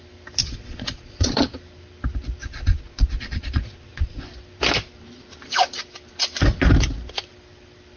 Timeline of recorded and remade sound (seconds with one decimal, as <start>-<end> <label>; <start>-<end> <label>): 0.0-0.4 recorded; 0.4-1.4 remade; 1.4-2.4 recorded; 2.4-4.2 remade; 4.2-8.0 recorded